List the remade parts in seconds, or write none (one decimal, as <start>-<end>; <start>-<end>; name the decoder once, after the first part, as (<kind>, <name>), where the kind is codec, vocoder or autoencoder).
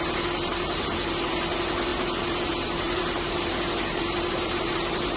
0.0-5.2 (vocoder, BigVGAN v2)